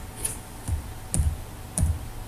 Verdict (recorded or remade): recorded